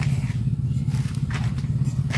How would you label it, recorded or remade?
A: recorded